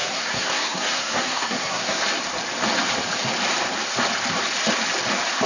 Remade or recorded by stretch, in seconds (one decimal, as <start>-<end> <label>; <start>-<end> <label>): 0.0-2.0 remade; 2.0-5.5 recorded